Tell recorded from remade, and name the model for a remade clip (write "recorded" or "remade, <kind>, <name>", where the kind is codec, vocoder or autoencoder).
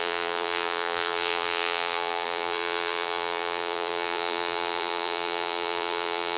remade, vocoder, BigVGAN v2